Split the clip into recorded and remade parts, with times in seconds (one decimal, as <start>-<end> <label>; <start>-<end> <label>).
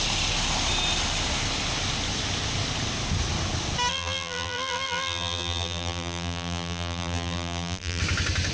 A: 0.0-3.9 recorded; 3.9-8.0 remade; 8.0-8.5 recorded